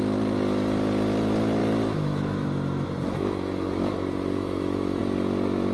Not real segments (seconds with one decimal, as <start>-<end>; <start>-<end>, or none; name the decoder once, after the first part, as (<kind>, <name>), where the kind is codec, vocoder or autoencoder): 1.6-5.0 (autoencoder, DAC-VAE)